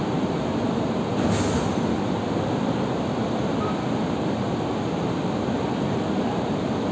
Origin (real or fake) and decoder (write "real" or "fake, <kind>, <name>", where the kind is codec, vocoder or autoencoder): real